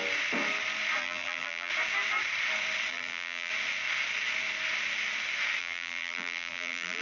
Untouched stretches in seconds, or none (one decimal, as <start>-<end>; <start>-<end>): 0.0-1.0; 1.7-2.9; 3.5-5.6